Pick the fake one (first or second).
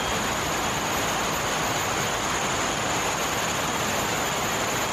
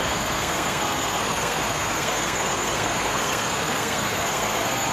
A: second